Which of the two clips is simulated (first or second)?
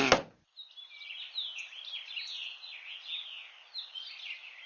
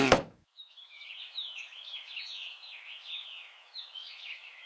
second